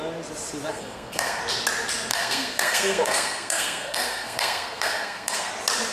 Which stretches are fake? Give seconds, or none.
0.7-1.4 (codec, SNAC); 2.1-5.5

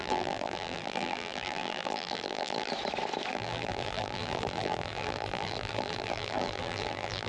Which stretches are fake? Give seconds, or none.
0.0-2.7 (vocoder, BigVGAN v2); 3.3-7.3

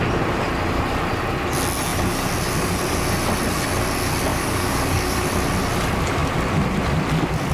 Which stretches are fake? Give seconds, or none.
4.3-5.3 (codec, DAC)